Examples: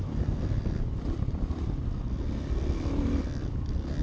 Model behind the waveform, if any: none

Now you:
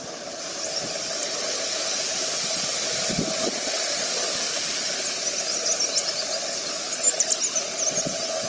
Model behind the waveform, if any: none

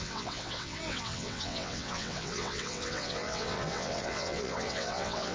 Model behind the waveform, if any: vocoder, WaveNeXt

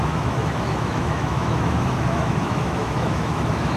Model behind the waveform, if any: autoencoder, DAC-VAE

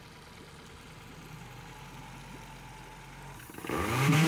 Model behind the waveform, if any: none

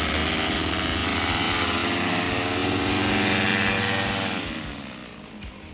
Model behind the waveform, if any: none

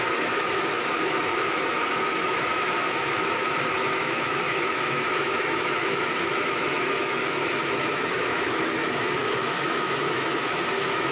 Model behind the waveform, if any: autoencoder, DAC-VAE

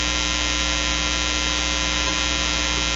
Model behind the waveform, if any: none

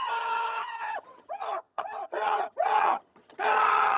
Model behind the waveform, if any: vocoder, HiFi-GAN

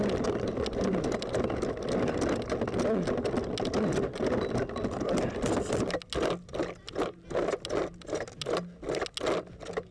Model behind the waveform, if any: none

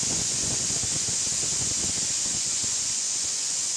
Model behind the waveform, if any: vocoder, Vocos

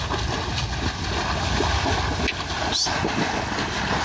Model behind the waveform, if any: none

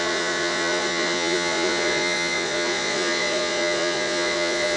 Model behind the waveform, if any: vocoder, Vocos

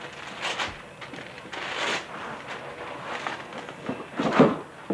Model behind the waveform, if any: none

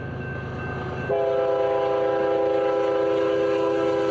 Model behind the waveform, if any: none